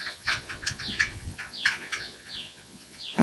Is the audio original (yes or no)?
no